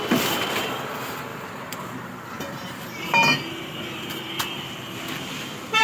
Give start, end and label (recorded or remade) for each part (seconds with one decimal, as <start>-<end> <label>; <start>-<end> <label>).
0.0-1.3 recorded; 1.3-4.8 remade; 4.8-5.8 recorded